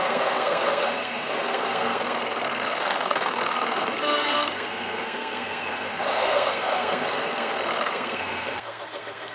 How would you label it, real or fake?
fake